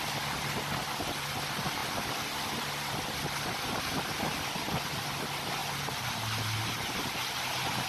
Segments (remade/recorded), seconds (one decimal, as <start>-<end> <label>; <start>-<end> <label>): 0.0-7.9 recorded